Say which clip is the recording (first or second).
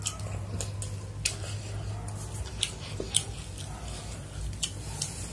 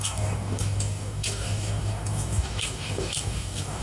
first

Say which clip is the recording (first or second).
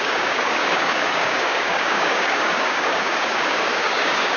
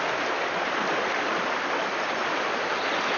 second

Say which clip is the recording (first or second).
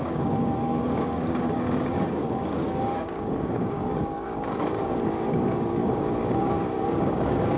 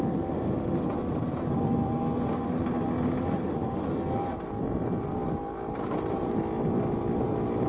second